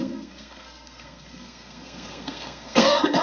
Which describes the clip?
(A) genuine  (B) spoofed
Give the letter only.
B